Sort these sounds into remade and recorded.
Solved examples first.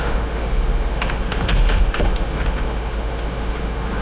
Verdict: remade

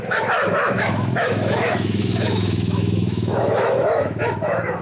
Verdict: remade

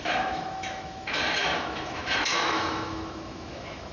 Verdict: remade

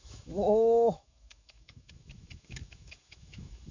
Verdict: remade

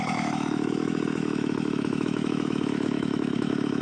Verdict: remade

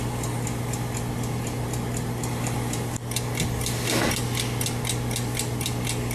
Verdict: recorded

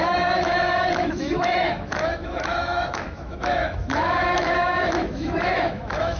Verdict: remade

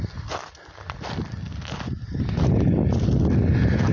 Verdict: recorded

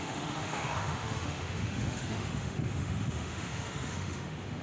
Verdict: remade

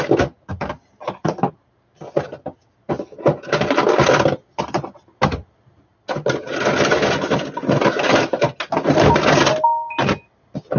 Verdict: recorded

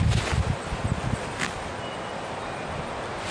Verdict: recorded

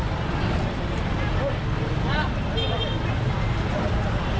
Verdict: recorded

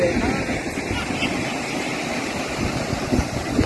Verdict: recorded